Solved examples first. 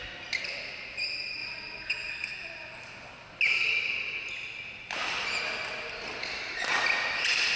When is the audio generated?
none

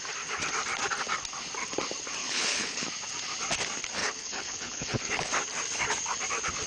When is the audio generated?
2.2-2.8 (codec, HILCodec); 4.0-5.1